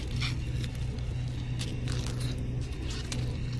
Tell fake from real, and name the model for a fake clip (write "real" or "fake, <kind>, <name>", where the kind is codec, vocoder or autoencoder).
real